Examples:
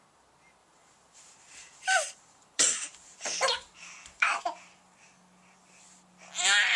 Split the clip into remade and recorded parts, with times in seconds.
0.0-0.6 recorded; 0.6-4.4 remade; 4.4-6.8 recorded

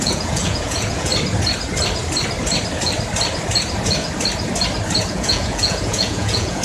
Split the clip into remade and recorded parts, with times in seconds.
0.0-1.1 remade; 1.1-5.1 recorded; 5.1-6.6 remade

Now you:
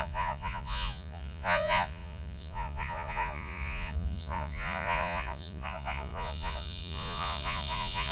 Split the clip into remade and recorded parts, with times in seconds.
0.0-8.1 remade

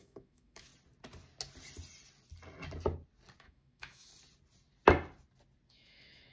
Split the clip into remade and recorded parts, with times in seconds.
0.0-0.7 remade; 0.7-3.4 recorded; 3.4-4.1 remade; 4.1-5.7 recorded; 5.7-6.3 remade

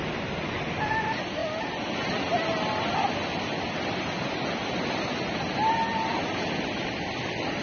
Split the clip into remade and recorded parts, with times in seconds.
0.0-7.6 recorded